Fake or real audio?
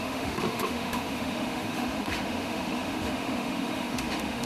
fake